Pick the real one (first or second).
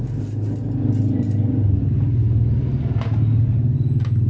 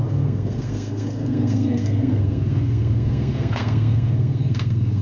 first